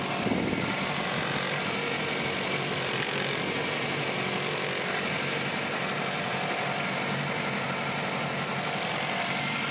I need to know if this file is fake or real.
real